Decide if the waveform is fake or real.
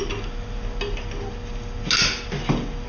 real